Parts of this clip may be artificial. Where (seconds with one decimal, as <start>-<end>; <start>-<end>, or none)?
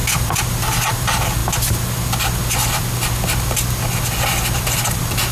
none